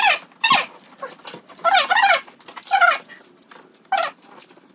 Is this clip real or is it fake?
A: real